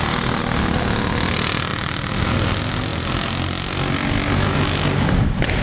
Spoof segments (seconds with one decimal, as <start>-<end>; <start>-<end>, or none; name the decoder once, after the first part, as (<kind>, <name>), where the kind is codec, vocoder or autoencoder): none